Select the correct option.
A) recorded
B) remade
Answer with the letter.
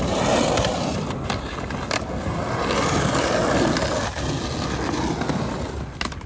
A